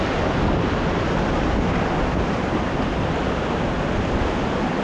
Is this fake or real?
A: real